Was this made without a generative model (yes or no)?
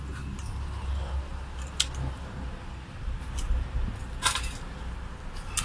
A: yes